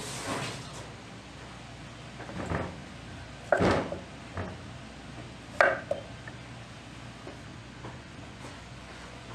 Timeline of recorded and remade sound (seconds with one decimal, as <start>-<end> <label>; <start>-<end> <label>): 0.0-7.5 recorded; 7.5-9.3 remade